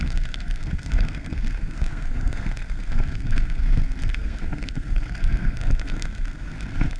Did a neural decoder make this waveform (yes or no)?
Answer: yes